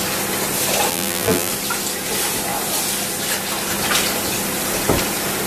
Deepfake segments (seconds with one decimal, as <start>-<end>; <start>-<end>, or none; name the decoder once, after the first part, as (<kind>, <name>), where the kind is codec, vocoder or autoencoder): 0.9-1.5 (vocoder, BigVGAN v2)